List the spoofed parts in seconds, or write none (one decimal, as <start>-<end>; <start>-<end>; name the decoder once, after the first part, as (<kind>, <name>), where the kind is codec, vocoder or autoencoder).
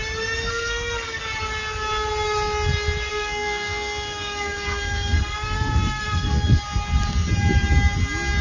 0.5-1.2 (codec, SNAC); 3.1-6.6